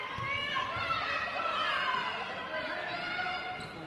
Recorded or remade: recorded